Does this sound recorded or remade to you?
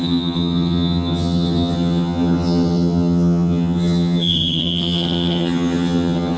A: remade